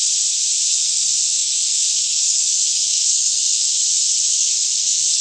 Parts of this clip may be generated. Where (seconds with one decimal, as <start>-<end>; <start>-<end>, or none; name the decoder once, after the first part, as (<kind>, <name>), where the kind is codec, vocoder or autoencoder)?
0.7-3.8 (codec, SNAC); 4.3-5.2